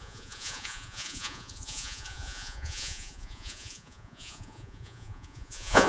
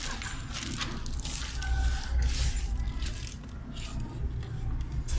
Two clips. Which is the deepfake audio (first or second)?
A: first